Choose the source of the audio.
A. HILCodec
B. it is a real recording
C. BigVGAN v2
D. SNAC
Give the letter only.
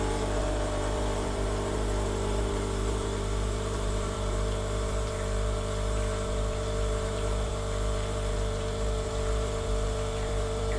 C